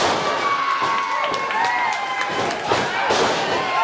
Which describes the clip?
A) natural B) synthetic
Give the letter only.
A